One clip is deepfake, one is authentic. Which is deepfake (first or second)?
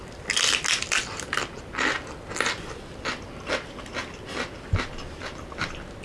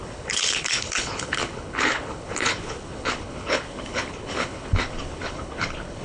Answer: second